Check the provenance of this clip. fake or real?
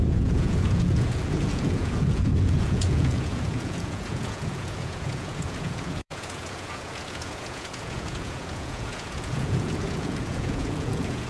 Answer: fake